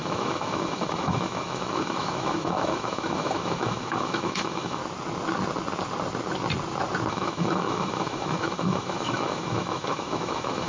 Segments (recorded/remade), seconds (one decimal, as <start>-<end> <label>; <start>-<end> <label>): 0.0-4.8 remade; 4.8-7.1 recorded; 7.1-10.7 remade